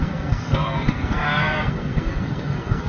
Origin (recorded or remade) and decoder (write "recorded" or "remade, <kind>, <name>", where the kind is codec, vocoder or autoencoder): remade, codec, SNAC